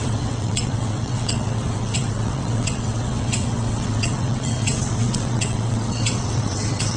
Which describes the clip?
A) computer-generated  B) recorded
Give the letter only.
A